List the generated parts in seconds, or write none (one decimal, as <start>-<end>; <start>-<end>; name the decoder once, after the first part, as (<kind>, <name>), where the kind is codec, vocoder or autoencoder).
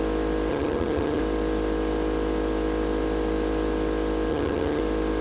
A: 0.5-1.2 (vocoder, HiFi-GAN); 4.3-4.8